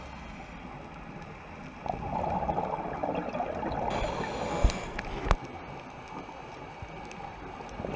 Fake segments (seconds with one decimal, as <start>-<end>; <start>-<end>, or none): 4.5-5.0